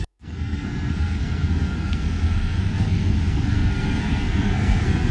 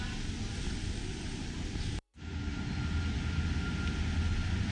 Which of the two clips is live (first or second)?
second